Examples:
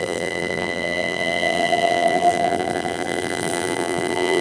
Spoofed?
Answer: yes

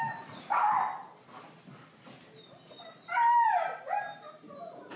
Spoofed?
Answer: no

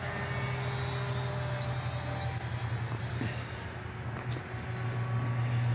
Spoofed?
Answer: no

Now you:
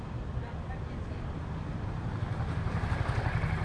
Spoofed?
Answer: no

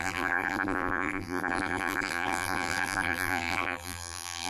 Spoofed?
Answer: yes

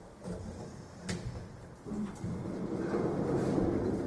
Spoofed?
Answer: yes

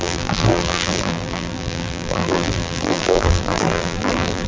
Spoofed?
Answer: yes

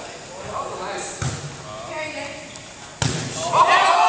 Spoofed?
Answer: no